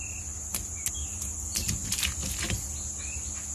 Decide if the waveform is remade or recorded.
recorded